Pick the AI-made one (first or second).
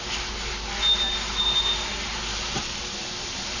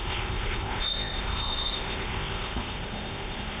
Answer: second